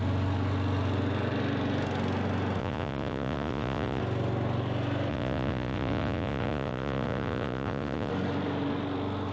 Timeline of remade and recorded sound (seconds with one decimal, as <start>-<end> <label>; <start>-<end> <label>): 0.0-2.6 recorded; 2.6-4.0 remade; 4.0-5.1 recorded; 5.1-8.1 remade; 8.1-9.3 recorded